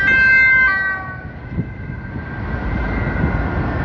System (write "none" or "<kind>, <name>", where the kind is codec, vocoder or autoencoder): none